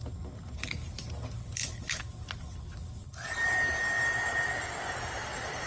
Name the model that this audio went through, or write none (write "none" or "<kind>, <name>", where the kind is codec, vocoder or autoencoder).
none